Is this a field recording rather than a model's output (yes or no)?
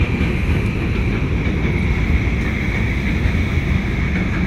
yes